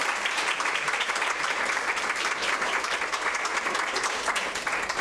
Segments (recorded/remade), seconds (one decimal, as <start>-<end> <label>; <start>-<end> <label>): 0.0-3.0 remade; 3.0-5.0 recorded